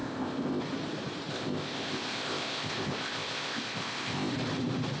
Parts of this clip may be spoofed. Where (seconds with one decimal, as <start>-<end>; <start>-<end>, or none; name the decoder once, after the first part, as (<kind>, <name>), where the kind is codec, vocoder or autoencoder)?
0.0-0.6 (codec, ZipCodec); 1.3-4.3